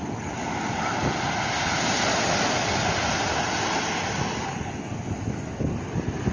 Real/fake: real